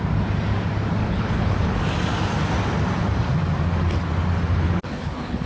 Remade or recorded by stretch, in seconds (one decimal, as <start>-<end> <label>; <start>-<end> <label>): 0.0-1.0 recorded; 1.0-1.8 remade; 1.8-4.5 recorded; 4.5-5.5 remade